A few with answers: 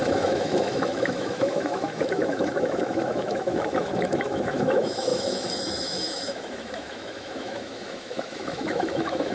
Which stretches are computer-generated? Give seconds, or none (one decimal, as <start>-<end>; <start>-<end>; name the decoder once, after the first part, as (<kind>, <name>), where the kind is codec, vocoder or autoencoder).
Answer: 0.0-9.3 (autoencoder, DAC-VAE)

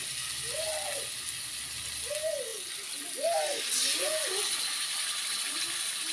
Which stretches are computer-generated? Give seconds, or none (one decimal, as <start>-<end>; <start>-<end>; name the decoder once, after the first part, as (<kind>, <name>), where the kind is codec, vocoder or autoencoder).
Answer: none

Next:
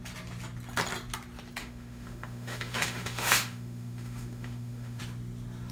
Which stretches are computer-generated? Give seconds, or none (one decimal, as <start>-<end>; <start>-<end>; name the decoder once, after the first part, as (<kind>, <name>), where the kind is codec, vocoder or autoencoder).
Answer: 1.6-5.0 (autoencoder, DAC-VAE)

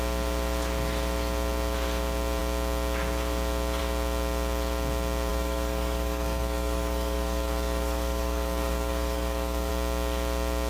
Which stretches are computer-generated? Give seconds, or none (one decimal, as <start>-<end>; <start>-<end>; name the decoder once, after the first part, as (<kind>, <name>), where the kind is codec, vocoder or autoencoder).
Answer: 5.3-9.7 (codec, DAC)